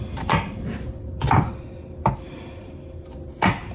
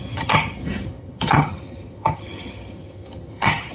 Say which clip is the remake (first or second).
second